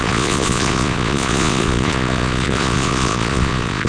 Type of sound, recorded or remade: remade